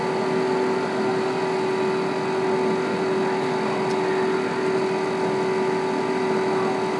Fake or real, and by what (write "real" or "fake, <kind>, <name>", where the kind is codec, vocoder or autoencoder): real